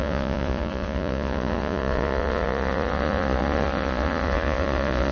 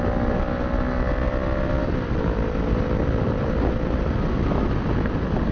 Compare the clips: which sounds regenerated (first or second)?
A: first